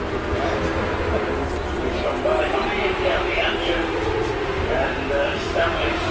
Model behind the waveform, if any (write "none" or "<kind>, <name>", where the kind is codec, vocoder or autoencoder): none